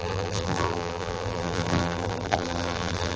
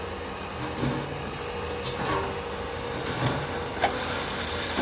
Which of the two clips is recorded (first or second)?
second